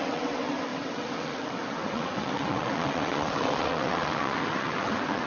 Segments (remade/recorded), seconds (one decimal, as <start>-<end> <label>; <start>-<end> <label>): 0.0-5.3 remade